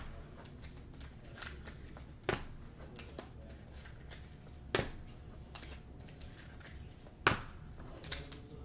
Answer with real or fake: real